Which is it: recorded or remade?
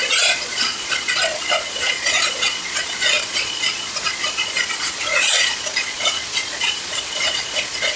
remade